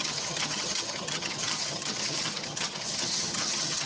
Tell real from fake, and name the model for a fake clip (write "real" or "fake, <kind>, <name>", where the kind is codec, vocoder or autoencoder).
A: fake, vocoder, HiFi-GAN